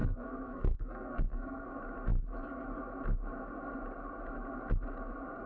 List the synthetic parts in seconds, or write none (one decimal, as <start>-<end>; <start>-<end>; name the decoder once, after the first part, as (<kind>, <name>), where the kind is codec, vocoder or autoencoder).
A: 0.0-1.7 (codec, SNAC)